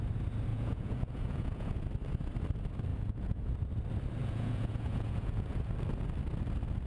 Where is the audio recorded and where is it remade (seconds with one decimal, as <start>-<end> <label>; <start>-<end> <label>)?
0.0-0.5 recorded; 0.5-1.8 remade; 1.8-2.9 recorded; 2.9-3.5 remade; 3.5-4.2 recorded; 4.2-5.6 remade; 5.6-6.9 recorded